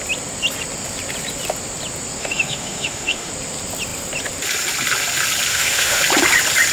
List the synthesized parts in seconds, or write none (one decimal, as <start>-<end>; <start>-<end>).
2.2-3.3; 5.5-6.0